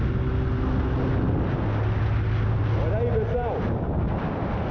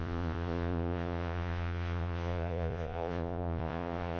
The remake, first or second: second